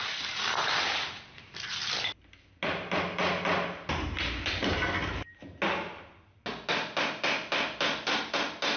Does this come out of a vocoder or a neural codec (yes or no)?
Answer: no